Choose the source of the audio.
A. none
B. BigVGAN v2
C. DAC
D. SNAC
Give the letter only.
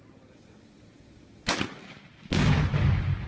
A